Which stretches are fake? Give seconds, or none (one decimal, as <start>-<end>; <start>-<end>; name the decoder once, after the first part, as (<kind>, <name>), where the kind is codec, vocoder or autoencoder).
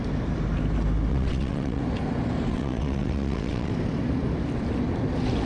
1.1-1.8 (vocoder, WaveNeXt); 2.5-3.7